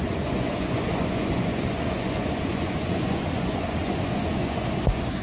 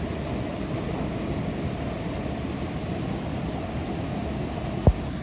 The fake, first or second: first